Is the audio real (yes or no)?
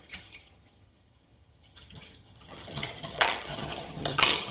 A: no